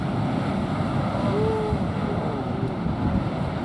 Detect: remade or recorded recorded